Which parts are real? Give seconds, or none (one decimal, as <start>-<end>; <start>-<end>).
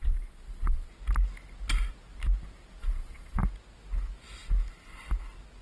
0.9-2.8; 3.4-5.6